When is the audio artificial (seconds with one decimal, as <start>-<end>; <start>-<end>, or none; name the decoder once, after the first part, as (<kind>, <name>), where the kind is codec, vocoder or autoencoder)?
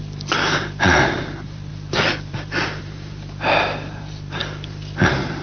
0.0-4.4 (vocoder, BigVGAN v2); 5.0-5.4